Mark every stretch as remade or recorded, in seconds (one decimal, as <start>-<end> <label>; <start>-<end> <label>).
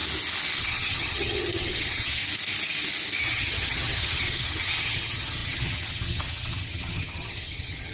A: 0.0-0.6 recorded; 0.6-2.2 remade; 2.2-3.2 recorded; 3.2-7.9 remade